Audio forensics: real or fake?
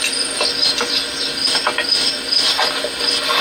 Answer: real